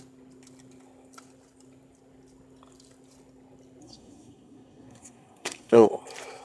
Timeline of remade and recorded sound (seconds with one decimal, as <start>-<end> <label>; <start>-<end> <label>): 0.0-3.8 recorded; 3.8-6.0 remade; 6.0-6.4 recorded

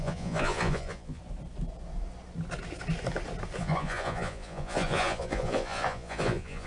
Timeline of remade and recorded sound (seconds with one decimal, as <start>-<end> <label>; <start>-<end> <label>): 0.0-1.2 remade; 1.2-3.6 recorded; 3.6-6.7 remade